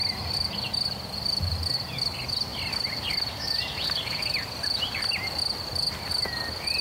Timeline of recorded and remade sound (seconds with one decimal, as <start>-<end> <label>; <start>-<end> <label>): 0.0-2.0 remade; 2.0-2.5 recorded; 2.5-6.8 remade